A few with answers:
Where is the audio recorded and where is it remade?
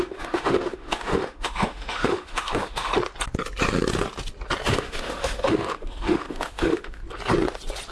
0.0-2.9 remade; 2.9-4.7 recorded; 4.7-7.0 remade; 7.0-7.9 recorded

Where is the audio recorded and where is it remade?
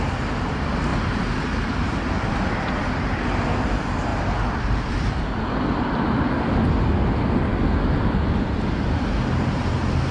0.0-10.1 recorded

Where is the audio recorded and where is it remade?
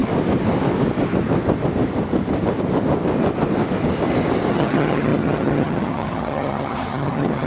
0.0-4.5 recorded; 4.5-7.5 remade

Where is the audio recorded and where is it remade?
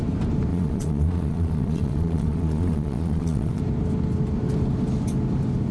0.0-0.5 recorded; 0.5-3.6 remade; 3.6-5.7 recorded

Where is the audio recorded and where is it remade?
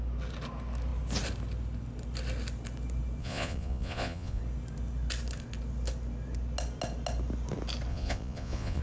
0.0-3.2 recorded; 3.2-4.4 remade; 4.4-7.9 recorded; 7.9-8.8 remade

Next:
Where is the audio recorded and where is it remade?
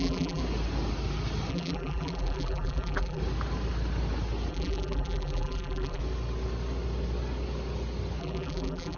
0.0-0.4 remade; 0.4-1.5 recorded; 1.5-3.2 remade; 3.2-4.5 recorded; 4.5-6.0 remade; 6.0-8.2 recorded; 8.2-9.0 remade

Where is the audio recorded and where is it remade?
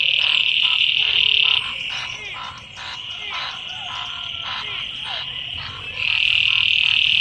0.0-0.4 recorded; 0.4-1.2 remade; 1.2-7.2 recorded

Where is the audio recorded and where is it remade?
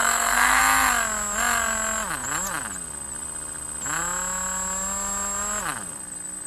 0.0-0.6 remade; 0.6-6.5 recorded